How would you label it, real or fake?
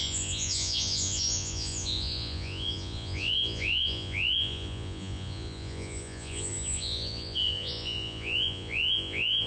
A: fake